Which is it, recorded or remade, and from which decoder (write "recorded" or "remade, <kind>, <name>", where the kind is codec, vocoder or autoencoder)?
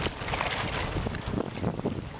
recorded